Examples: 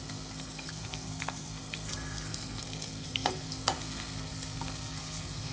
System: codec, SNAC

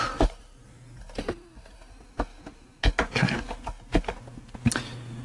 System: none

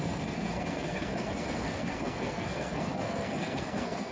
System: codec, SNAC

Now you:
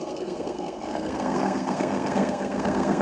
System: codec, SNAC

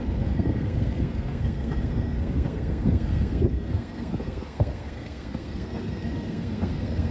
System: codec, SNAC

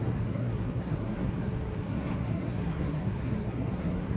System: codec, SNAC